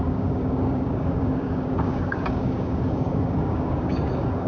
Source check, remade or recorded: remade